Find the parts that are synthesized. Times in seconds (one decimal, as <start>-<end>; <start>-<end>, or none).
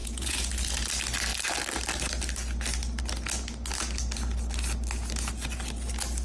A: 0.0-0.5